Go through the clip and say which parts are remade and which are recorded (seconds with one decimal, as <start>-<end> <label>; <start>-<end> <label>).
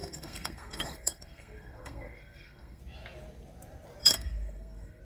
0.0-2.8 remade; 2.8-4.0 recorded; 4.0-5.0 remade